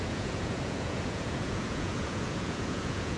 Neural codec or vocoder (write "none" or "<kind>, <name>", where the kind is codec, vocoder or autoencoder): vocoder, Vocos